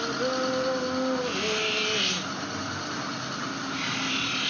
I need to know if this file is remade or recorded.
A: recorded